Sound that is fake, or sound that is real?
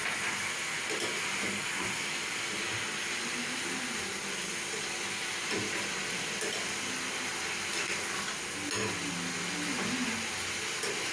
real